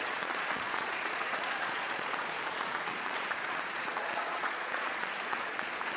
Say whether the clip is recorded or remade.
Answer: remade